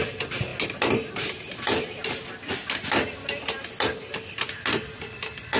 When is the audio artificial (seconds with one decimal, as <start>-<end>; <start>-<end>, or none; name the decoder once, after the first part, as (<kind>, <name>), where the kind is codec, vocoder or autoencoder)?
none